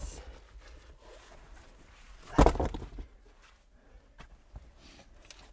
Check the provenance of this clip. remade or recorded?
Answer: recorded